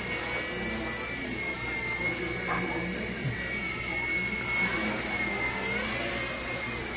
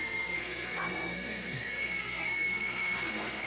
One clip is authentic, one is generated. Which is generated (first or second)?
second